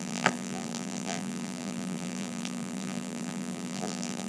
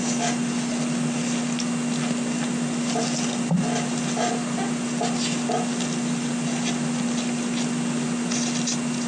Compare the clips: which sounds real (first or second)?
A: second